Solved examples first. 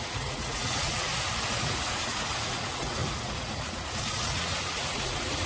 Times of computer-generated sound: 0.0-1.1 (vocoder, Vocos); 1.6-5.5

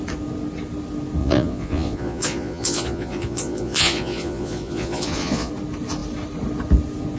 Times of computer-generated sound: 1.2-5.5 (vocoder, Vocos)

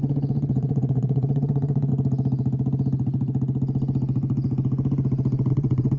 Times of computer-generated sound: 0.0-1.9 (vocoder, Vocos); 5.5-6.0

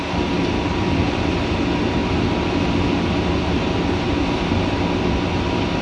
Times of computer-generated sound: none

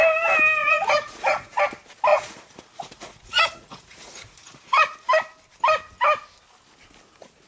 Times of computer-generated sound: 0.6-1.6 (vocoder, Vocos); 2.1-5.1